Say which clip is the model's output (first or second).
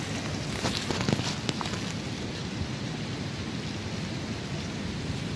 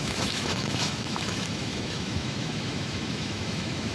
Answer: second